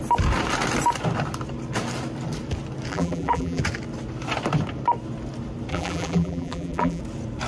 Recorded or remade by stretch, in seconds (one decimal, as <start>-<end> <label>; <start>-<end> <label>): 0.0-2.9 recorded; 2.9-3.6 remade; 3.6-5.7 recorded; 5.7-7.0 remade; 7.0-7.5 recorded